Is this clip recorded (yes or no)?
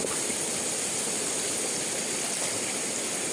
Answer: no